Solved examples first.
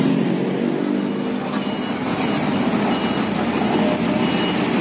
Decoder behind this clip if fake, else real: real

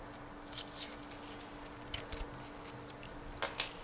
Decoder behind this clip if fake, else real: real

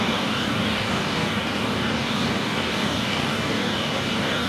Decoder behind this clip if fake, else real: fake, codec, DAC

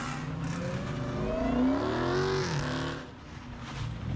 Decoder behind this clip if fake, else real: real